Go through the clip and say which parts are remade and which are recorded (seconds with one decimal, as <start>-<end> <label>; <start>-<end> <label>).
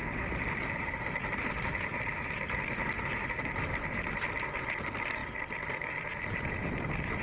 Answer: 0.0-7.2 recorded